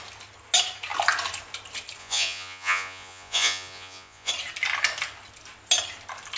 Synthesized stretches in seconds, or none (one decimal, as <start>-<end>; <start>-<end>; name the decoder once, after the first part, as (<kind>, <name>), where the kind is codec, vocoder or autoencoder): 2.0-4.3 (vocoder, Vocos)